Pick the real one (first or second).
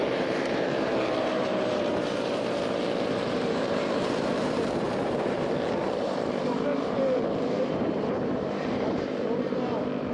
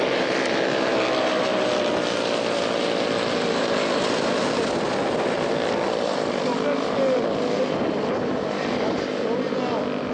second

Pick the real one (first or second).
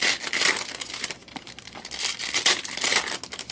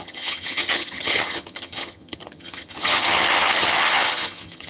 first